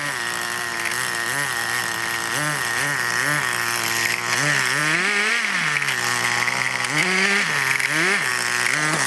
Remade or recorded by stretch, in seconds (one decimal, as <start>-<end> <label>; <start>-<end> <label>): 0.0-9.1 recorded